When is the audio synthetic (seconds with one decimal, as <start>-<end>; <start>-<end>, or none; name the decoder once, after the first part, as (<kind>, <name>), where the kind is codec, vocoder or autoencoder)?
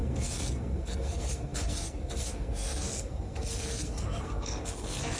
0.0-5.2 (codec, SNAC)